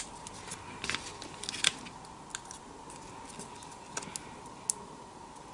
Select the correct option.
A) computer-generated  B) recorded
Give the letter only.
B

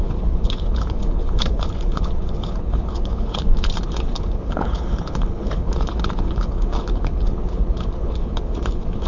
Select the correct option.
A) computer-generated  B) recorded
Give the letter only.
A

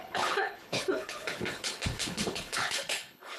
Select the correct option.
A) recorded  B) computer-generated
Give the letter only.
B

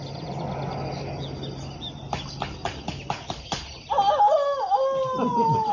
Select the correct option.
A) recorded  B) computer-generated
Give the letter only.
A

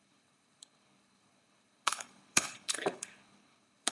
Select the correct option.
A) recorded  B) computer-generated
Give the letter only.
B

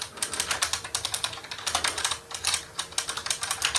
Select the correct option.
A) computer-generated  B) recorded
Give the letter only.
B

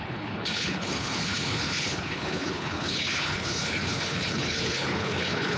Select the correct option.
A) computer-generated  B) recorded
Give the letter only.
A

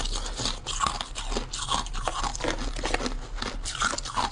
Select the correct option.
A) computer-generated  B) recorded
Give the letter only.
B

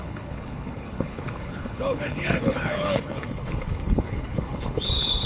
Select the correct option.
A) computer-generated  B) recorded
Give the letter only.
A